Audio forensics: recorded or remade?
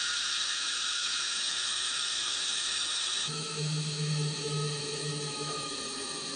remade